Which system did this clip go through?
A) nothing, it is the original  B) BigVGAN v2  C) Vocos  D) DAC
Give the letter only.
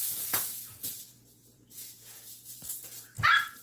C